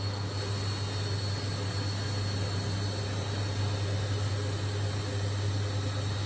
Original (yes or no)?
yes